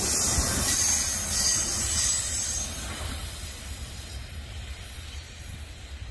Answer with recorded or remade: remade